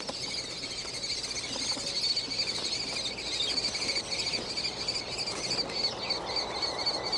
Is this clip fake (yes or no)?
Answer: no